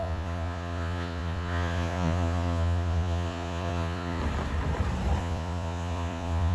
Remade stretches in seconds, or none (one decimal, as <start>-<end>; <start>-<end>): 0.0-4.2; 5.2-6.5